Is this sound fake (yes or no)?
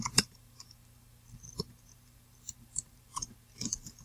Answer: yes